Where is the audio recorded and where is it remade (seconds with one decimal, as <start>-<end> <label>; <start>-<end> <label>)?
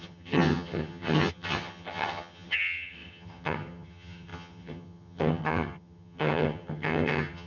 0.0-7.5 remade